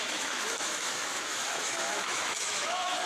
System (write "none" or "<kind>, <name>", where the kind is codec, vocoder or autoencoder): autoencoder, DAC-VAE